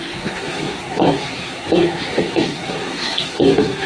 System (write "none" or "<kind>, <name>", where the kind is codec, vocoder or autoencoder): codec, SNAC